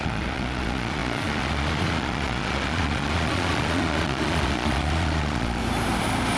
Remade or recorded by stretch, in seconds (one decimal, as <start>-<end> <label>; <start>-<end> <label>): 0.0-5.6 remade; 5.6-6.4 recorded